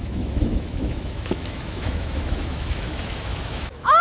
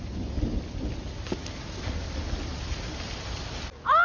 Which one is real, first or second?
second